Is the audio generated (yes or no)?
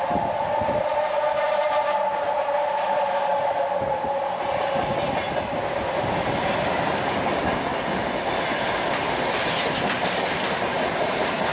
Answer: no